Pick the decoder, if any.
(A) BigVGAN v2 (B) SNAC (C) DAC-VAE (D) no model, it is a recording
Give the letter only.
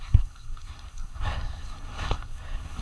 B